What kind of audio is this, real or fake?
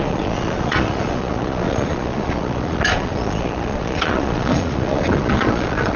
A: fake